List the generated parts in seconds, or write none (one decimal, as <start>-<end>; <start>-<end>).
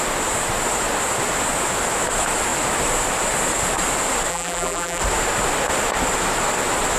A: 4.3-5.0